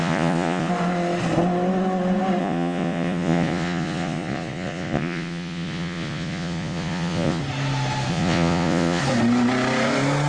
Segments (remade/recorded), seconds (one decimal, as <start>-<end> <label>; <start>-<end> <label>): 0.0-0.7 remade; 0.7-2.4 recorded; 2.4-7.4 remade; 7.4-8.1 recorded; 8.1-9.0 remade; 9.0-10.3 recorded